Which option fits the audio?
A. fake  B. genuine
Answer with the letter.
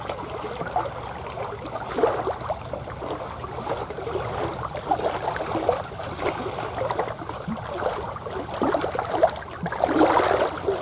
B